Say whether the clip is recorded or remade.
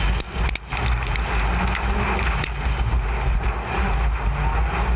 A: recorded